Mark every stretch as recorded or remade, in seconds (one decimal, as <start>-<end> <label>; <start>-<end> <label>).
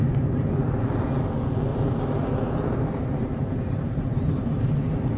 0.0-1.7 recorded; 1.7-4.8 remade; 4.8-5.2 recorded